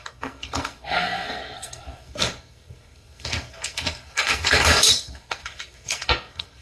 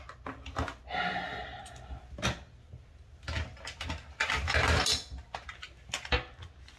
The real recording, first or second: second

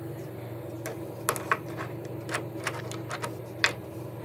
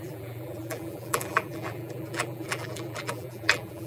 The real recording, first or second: first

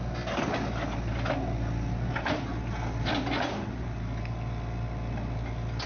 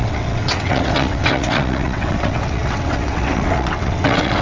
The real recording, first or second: first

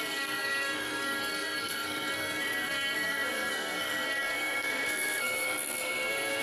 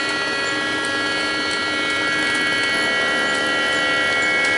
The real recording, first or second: second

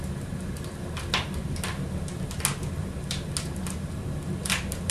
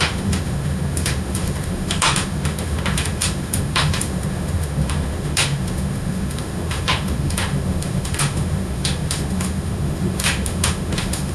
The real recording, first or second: first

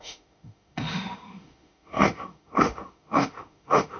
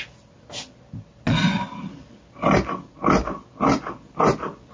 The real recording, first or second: second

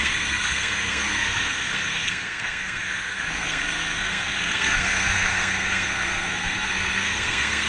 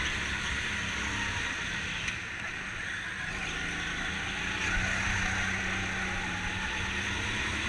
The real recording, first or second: second